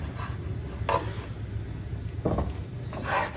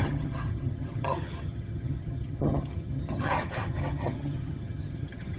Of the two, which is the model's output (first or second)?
second